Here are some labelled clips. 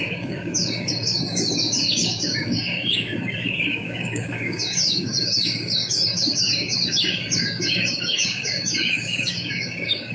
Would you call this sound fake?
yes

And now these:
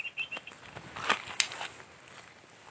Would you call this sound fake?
no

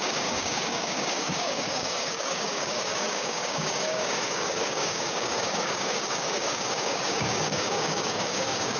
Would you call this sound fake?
yes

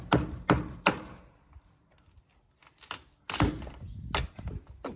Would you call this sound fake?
no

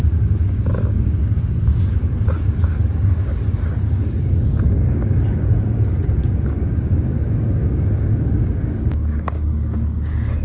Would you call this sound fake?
yes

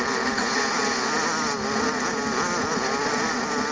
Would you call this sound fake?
no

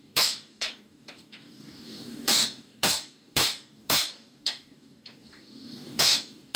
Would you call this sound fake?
yes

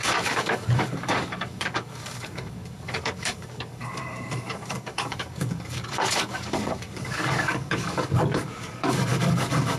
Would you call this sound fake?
yes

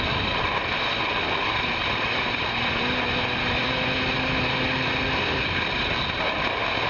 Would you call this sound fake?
no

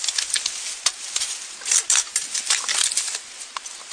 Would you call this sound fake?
no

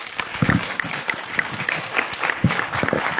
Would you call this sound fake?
yes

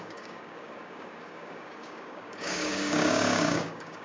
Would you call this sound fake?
yes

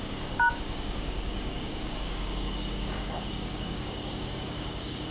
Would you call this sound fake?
yes